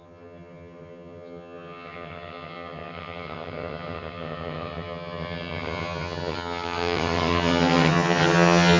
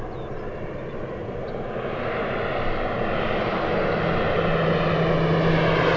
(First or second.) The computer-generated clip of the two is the first